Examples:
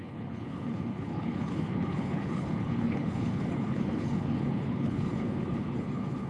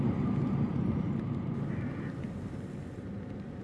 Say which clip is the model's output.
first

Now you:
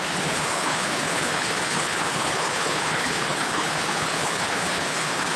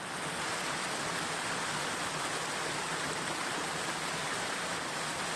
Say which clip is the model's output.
first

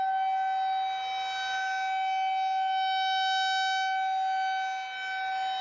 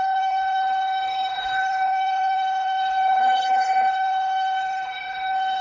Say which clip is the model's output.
second